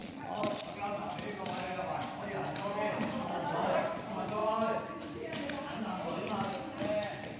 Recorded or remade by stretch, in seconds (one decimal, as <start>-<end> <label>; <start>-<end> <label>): 0.0-0.8 remade; 0.8-7.4 recorded